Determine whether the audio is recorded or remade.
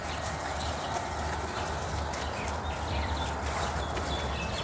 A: recorded